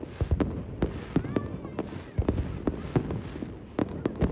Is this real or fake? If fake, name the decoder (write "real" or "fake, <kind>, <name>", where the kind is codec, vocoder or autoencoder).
real